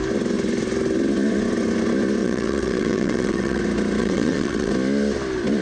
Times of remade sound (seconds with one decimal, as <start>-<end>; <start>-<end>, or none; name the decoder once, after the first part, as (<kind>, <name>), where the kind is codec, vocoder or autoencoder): 2.2-3.6 (vocoder, WaveNeXt); 4.0-4.7